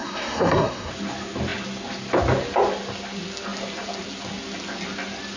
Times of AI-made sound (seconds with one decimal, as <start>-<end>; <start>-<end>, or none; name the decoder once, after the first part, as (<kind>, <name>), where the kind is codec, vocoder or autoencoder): 0.0-0.9 (codec, SNAC)